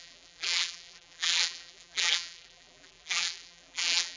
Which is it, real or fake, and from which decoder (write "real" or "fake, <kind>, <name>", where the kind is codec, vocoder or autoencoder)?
fake, vocoder, BigVGAN v2